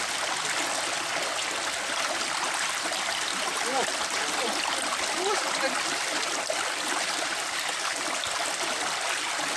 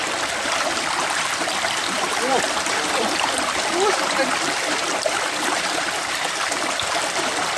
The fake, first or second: second